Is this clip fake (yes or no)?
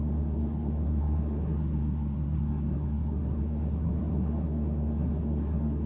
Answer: yes